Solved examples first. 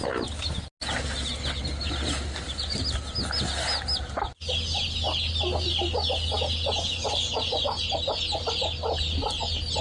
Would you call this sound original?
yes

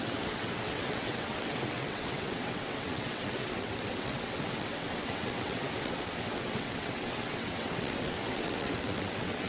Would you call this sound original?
no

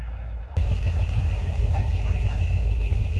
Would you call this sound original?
no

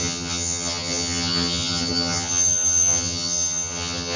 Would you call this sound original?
no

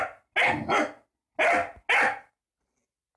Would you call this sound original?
yes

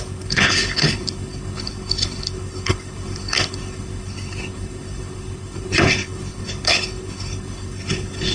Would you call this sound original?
no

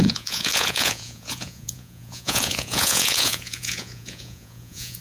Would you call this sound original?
no